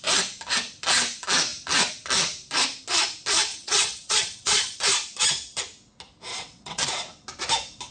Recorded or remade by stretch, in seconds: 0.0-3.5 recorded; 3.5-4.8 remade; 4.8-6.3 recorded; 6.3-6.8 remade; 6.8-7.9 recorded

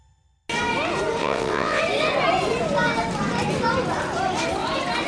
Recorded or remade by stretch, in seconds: 0.0-1.2 recorded; 1.2-1.8 remade; 1.8-5.1 recorded

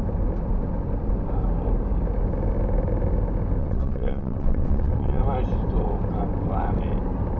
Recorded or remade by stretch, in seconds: 0.0-3.6 recorded; 3.6-5.2 remade; 5.2-7.4 recorded

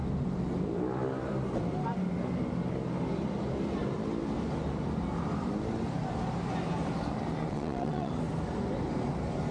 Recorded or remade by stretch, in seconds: 0.0-7.5 recorded; 7.5-8.1 remade; 8.1-9.5 recorded

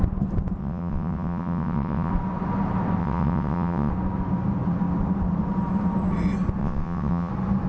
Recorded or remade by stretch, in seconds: 0.0-0.6 recorded; 0.6-2.1 remade; 2.1-3.0 recorded; 3.0-3.9 remade; 3.9-6.6 recorded; 6.6-7.3 remade; 7.3-7.7 recorded